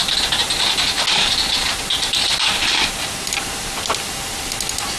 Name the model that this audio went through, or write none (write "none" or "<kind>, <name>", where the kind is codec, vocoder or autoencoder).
none